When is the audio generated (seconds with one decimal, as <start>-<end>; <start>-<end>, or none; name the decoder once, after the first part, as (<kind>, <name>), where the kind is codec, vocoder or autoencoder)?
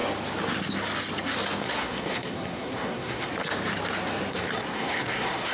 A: 1.6-3.3 (codec, SNAC); 4.3-5.5